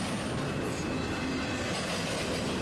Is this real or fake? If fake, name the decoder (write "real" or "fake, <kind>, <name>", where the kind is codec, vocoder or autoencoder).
real